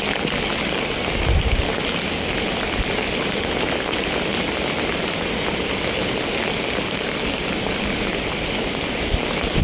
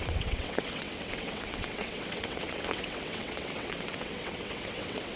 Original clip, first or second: first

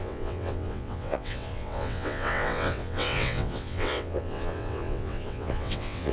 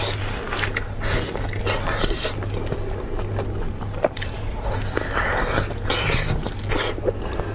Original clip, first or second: second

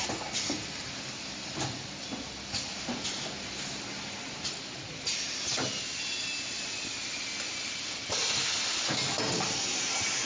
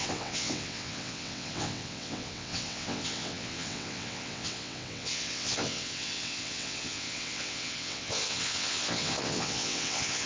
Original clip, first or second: first